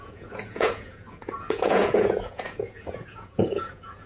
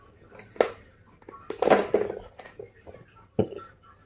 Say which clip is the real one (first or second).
second